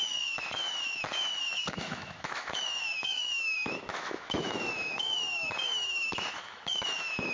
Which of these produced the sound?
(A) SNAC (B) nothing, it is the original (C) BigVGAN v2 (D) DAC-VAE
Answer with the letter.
D